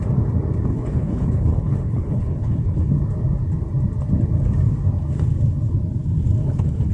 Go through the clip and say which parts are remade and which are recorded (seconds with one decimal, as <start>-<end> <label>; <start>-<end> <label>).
0.0-0.7 recorded; 0.7-2.9 remade; 2.9-6.4 recorded; 6.4-6.9 remade